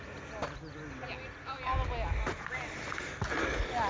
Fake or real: real